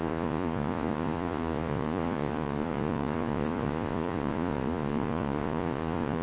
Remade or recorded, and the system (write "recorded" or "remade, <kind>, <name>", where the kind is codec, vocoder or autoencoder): remade, vocoder, Vocos